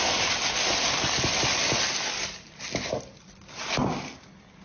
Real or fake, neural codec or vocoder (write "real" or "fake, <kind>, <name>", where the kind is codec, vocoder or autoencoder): real